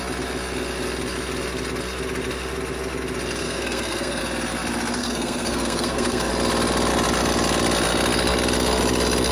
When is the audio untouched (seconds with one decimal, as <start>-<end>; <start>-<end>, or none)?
0.0-3.4; 4.2-5.0; 6.3-9.3